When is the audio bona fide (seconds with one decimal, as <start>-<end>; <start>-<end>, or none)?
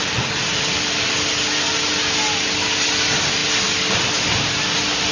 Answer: 0.0-5.1